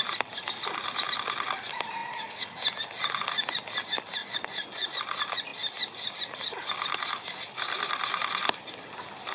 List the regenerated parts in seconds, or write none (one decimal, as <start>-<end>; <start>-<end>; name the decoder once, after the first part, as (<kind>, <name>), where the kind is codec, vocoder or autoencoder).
4.2-4.9 (vocoder, Vocos)